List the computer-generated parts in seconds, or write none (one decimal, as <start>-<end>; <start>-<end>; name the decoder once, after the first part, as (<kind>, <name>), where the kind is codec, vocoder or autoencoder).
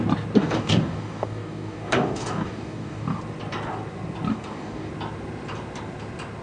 0.4-3.2 (codec, DAC); 4.3-4.9